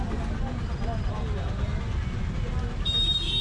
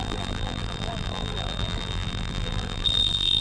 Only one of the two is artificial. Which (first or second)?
second